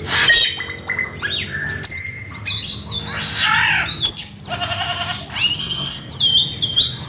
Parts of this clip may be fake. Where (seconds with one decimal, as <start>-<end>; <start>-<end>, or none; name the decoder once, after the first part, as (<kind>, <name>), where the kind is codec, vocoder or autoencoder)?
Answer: 5.6-6.1 (codec, SNAC)